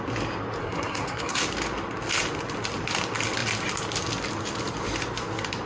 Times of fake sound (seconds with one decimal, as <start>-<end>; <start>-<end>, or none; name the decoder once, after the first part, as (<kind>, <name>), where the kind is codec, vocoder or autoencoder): 0.6-1.4 (codec, SNAC)